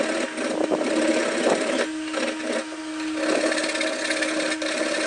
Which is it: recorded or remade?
recorded